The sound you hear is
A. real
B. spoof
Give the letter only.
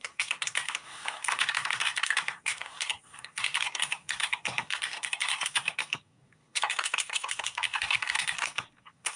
B